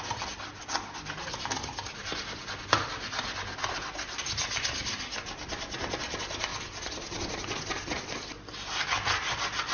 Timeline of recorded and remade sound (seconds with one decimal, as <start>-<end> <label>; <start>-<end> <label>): 0.0-9.7 recorded